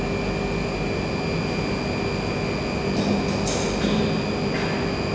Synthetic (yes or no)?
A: no